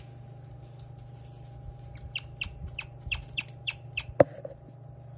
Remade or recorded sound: recorded